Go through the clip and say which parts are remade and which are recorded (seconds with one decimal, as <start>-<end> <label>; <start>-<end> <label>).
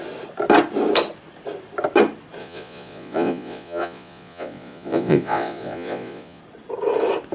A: 0.0-2.4 recorded; 2.4-6.4 remade; 6.4-7.3 recorded